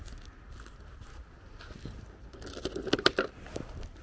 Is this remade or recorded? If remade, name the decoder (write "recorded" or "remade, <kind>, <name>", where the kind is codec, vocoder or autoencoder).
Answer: recorded